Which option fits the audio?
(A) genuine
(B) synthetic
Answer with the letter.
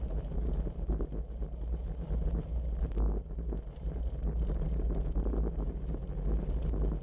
A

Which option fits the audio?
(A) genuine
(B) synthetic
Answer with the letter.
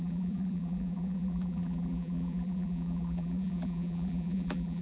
B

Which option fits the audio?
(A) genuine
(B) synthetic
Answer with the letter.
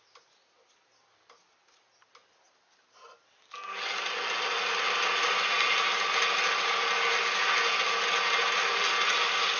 A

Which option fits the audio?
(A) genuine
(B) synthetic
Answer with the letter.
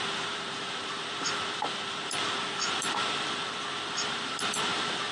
B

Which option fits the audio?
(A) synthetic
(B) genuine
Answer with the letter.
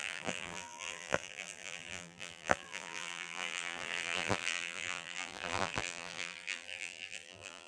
A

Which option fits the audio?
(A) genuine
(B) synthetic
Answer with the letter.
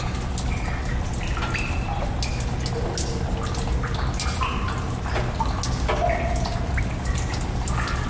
A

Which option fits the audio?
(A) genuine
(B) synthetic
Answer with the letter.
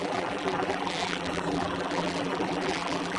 B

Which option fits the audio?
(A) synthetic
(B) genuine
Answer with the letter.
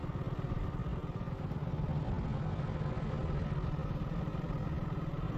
B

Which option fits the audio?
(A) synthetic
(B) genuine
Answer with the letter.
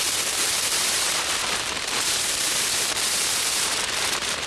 A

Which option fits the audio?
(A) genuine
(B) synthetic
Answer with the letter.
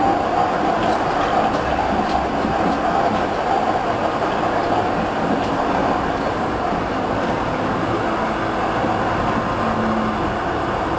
A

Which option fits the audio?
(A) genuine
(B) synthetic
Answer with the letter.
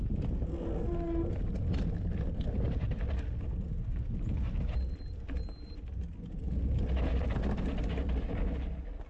A